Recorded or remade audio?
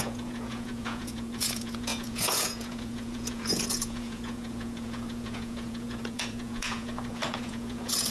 remade